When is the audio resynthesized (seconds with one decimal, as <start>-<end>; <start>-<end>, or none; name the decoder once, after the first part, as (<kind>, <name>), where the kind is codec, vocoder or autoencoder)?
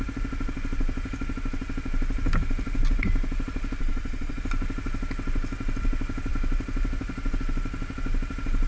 3.8-4.4 (vocoder, Vocos)